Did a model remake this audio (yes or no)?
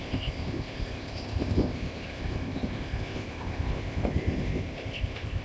yes